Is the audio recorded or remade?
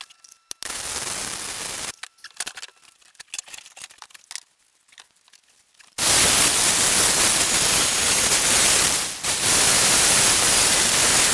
recorded